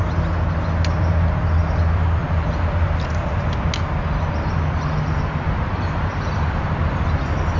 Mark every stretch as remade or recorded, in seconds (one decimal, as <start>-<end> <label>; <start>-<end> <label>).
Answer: 0.0-7.6 recorded

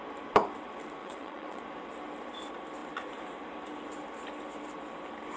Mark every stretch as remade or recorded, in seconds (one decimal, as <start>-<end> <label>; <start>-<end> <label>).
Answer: 0.0-1.0 recorded; 1.0-1.6 remade; 1.6-5.4 recorded

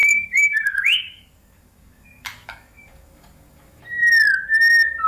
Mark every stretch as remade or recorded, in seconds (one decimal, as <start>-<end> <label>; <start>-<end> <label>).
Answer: 0.0-3.8 remade; 3.8-5.1 recorded

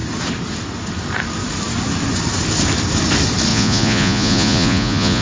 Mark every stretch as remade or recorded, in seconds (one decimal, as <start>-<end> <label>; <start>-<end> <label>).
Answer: 0.0-3.5 recorded; 3.5-5.2 remade

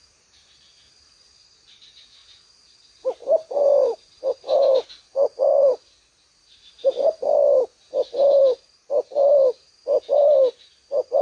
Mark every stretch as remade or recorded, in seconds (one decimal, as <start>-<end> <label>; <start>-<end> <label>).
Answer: 0.0-2.2 recorded; 2.2-6.9 remade; 6.9-8.4 recorded; 8.4-8.9 remade; 8.9-11.2 recorded